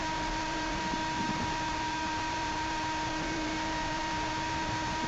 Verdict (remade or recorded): remade